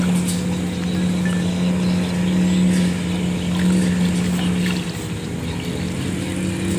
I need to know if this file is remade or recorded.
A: recorded